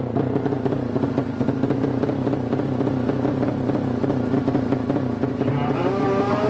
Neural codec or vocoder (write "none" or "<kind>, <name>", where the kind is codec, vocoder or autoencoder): none